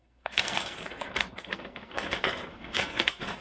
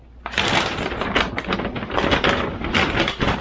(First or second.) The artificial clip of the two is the first